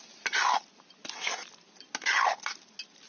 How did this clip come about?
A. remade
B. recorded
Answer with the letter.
B